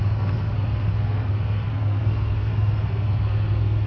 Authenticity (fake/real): fake